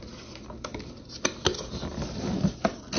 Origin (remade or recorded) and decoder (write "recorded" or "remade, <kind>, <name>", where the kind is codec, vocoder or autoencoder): recorded